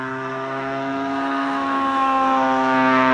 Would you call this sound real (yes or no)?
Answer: no